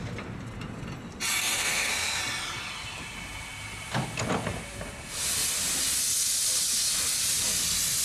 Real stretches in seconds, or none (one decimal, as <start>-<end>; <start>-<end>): 0.0-1.4; 2.2-8.0